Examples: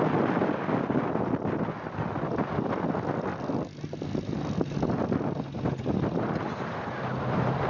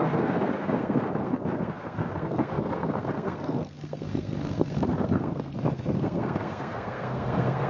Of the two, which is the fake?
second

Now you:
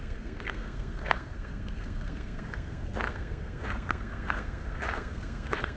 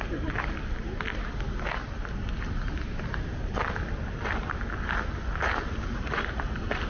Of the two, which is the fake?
first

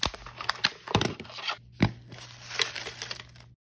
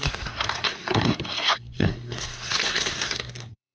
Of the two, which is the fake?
second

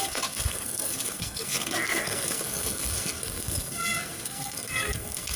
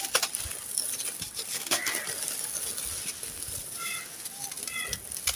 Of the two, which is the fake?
first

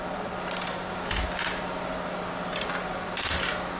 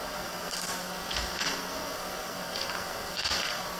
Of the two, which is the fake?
second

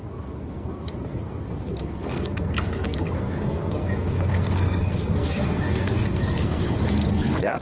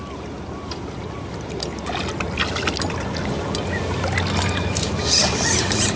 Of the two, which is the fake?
first